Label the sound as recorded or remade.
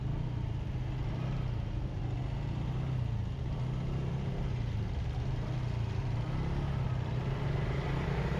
recorded